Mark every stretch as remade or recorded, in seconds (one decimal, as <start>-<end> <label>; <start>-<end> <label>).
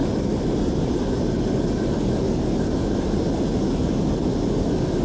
0.0-5.0 recorded